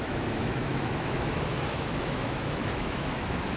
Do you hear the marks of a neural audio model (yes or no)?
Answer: yes